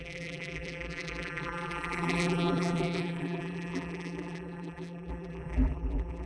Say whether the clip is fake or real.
fake